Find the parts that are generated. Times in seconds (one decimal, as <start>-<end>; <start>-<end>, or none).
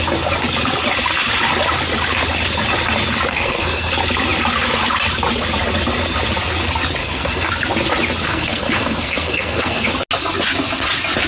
3.3-3.9; 7.0-7.5; 8.3-9.9